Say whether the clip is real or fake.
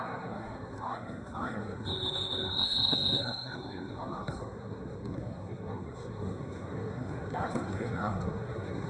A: fake